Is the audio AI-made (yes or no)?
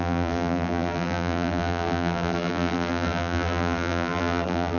yes